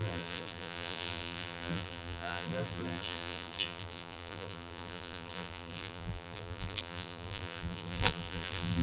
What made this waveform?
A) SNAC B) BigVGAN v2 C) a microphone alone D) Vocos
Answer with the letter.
B